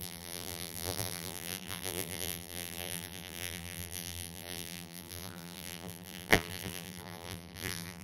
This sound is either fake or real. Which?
fake